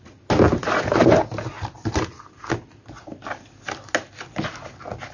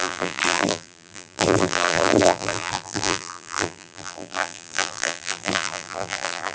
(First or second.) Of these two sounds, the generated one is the second